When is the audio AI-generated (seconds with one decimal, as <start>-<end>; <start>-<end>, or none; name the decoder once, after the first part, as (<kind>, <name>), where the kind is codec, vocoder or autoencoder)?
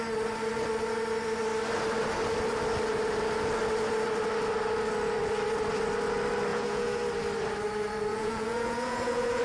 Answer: 6.5-7.0 (vocoder, Vocos); 8.1-9.4